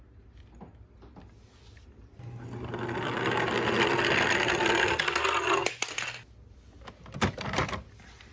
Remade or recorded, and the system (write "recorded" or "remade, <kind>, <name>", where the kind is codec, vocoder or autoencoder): recorded